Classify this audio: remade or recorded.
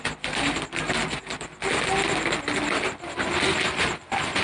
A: recorded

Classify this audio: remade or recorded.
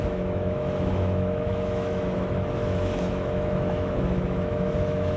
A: remade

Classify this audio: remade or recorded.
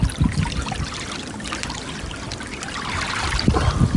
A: recorded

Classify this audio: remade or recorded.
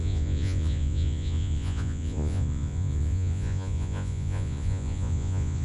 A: remade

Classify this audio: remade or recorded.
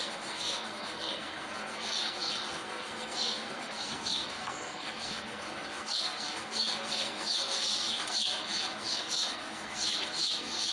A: remade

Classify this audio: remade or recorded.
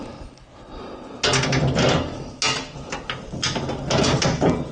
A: recorded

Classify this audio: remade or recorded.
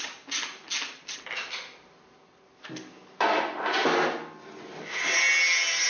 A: recorded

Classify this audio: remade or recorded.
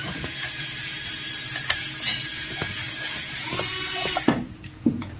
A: remade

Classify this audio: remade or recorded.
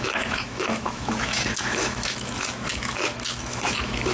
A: remade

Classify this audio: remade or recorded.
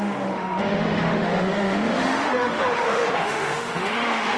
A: remade